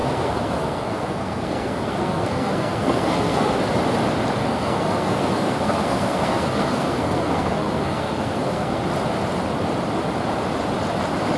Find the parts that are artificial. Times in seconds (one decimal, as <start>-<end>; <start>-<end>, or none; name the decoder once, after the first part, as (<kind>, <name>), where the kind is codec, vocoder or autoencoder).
0.0-3.6 (codec, SNAC); 4.4-8.8